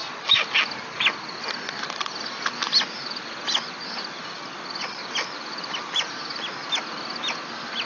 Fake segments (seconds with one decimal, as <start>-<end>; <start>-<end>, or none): none